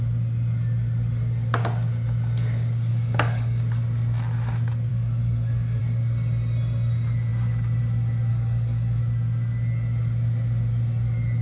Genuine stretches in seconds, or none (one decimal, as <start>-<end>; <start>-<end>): 0.0-2.9; 3.6-4.9; 5.8-8.3; 9.0-11.4